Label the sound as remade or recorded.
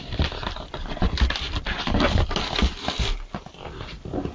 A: recorded